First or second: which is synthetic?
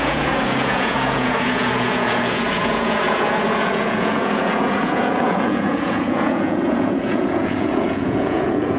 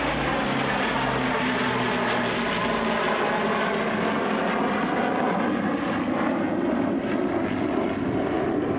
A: first